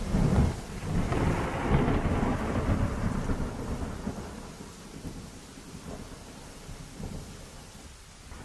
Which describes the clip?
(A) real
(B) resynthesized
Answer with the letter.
A